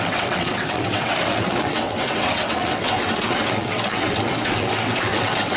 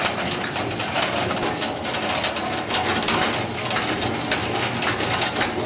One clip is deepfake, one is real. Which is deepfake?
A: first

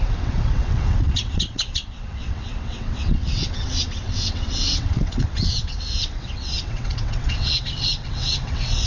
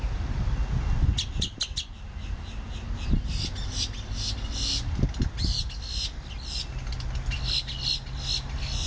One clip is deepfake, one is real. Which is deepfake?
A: first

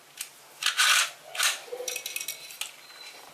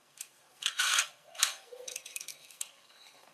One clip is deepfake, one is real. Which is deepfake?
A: second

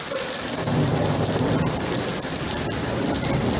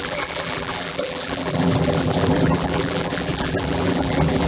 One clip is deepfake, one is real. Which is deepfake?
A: second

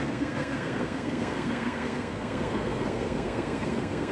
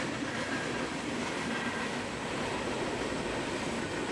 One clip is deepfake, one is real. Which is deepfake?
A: first